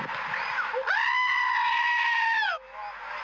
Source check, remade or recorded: recorded